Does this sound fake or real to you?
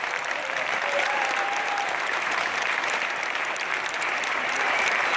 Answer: fake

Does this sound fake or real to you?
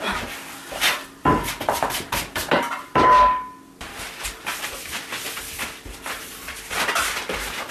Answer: real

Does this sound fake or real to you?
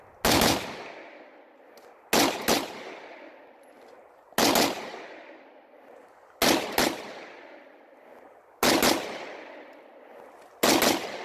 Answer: real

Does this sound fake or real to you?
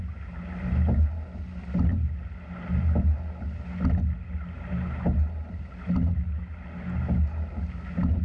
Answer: real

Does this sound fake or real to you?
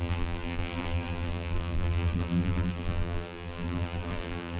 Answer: fake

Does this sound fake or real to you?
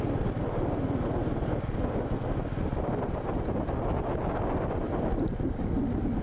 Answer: real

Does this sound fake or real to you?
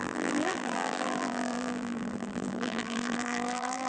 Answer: fake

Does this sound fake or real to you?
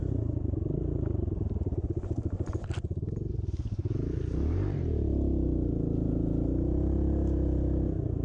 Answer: fake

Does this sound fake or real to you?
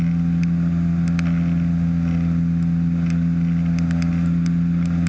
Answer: real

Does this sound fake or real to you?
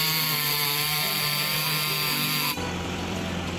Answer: fake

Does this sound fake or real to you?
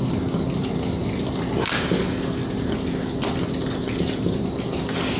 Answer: real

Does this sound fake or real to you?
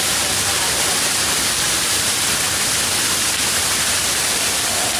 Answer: real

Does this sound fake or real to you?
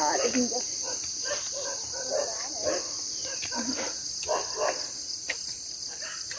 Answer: fake